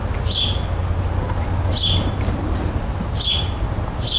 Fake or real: real